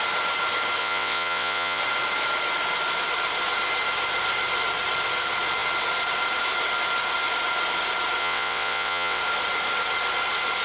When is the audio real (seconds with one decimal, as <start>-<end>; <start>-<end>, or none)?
0.0-0.8; 1.8-8.2; 9.2-10.6